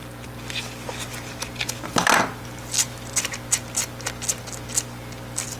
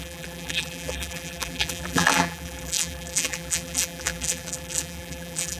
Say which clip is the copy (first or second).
second